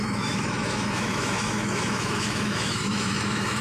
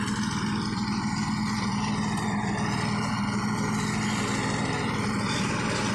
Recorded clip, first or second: second